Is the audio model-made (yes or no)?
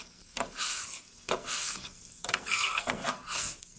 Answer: yes